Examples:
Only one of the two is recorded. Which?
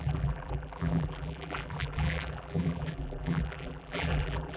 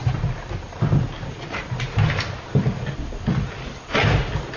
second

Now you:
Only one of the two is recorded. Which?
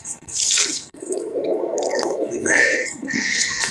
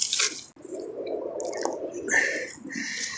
second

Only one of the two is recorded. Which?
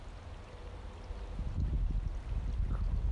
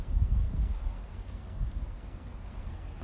first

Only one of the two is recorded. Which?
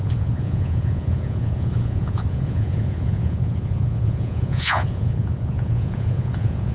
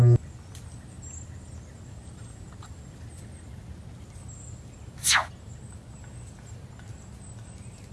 second